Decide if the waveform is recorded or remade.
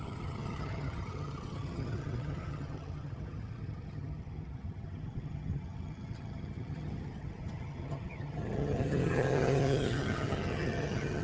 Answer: remade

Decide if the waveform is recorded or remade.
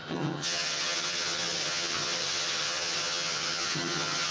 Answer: remade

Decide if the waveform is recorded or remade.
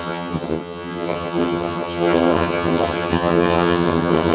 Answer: remade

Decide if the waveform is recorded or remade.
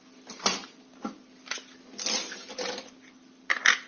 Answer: recorded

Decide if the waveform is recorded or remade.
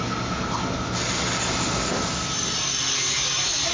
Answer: recorded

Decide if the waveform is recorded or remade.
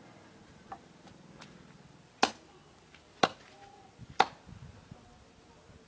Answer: recorded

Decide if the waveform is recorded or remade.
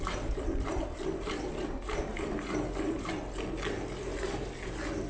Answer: recorded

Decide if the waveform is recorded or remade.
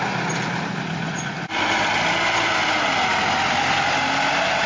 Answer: recorded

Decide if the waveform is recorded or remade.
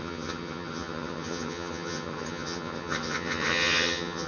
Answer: remade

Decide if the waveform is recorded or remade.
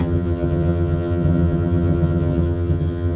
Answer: remade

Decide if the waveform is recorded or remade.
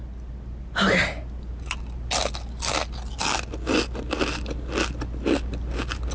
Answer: recorded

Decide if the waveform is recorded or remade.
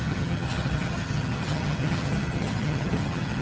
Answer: remade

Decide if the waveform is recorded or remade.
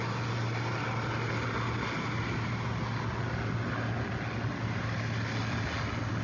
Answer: recorded